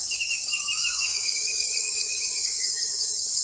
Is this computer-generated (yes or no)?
yes